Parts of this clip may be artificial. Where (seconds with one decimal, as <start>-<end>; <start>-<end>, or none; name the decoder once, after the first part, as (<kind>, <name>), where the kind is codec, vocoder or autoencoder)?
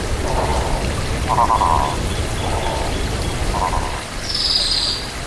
none